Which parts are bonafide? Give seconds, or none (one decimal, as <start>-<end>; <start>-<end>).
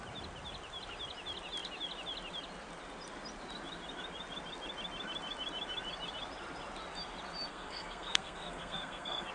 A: 0.0-7.5